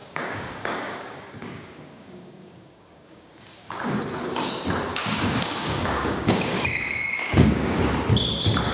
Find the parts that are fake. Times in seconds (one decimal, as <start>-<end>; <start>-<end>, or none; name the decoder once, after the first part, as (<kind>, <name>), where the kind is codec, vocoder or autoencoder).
0.0-4.5 (codec, DAC); 4.9-8.0